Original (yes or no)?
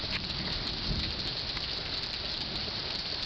yes